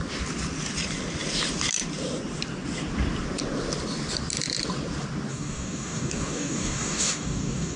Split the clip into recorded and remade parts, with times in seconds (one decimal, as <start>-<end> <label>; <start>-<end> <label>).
0.0-5.3 recorded; 5.3-7.8 remade